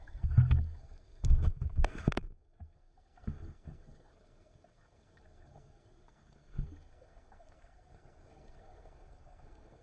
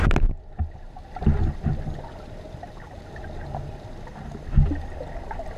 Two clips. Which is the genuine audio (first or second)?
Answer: second